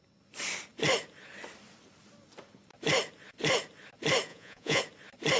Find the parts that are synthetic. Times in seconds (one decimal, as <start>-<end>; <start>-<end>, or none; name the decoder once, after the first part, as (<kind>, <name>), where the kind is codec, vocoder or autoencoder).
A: 4.3-4.8 (vocoder, Vocos)